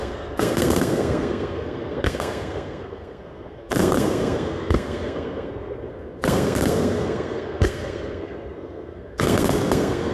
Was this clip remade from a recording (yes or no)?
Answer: yes